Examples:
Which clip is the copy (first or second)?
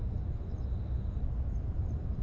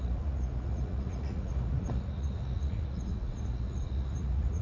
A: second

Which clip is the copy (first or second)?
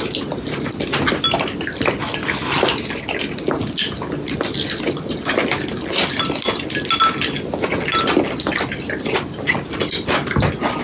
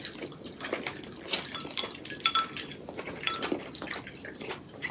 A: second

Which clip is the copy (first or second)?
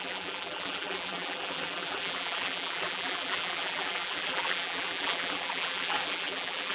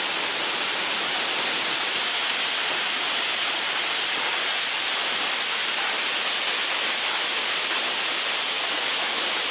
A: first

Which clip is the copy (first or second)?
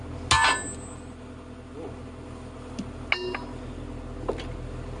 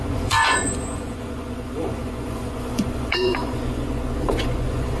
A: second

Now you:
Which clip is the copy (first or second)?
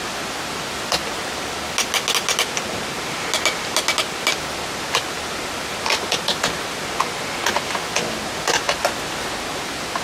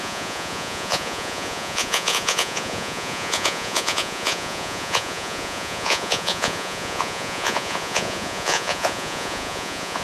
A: second